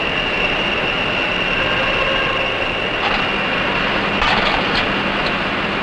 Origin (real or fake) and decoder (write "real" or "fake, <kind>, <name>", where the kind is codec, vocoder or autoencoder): real